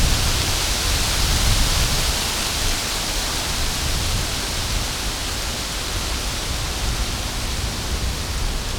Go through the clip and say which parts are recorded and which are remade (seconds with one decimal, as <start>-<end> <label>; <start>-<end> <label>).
0.0-1.3 recorded; 1.3-2.4 remade; 2.4-8.8 recorded